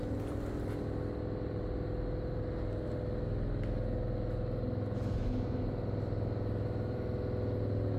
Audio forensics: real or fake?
real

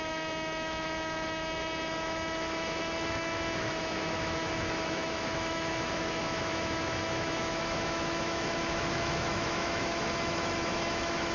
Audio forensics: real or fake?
fake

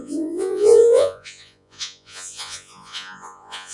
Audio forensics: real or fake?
fake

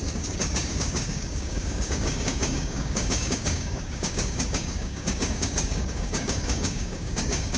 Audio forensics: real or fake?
fake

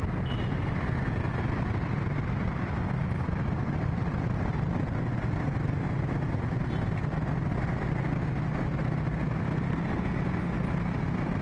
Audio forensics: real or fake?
real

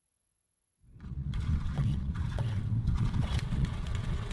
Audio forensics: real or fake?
fake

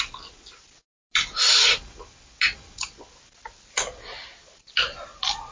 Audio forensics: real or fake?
real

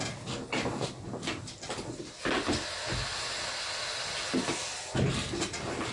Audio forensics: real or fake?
real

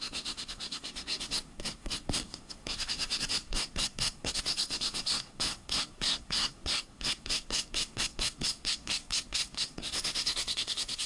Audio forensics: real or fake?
fake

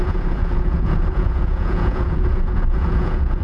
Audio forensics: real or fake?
fake